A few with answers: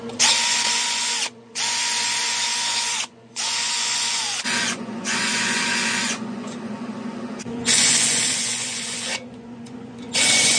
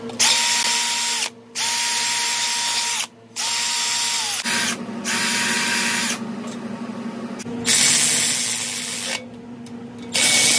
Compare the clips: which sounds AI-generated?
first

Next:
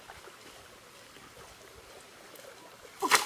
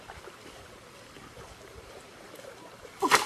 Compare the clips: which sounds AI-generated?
second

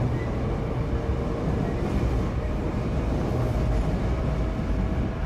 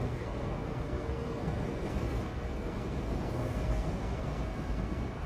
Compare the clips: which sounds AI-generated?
second